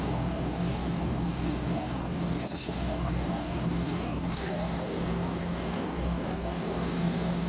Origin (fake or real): fake